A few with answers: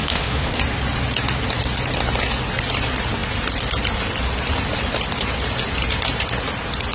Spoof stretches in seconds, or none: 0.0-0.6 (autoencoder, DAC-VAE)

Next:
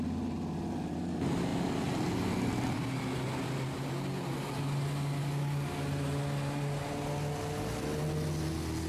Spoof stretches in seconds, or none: none

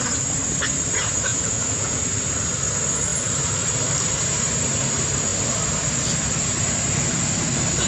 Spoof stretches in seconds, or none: 1.3-2.0 (vocoder, Vocos)

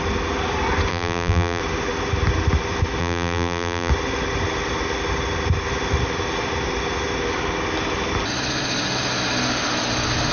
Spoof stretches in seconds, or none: 0.9-1.6 (vocoder, BigVGAN v2); 3.0-3.9